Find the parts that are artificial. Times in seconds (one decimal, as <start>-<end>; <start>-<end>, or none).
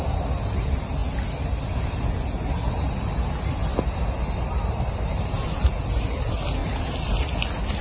none